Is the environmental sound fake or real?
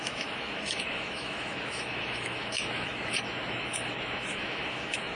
fake